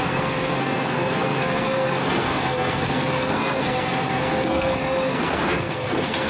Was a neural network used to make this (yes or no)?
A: yes